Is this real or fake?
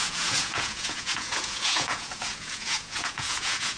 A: fake